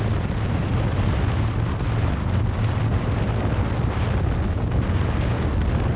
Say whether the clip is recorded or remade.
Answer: recorded